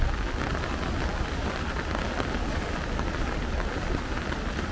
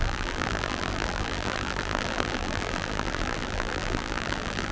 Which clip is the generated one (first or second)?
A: second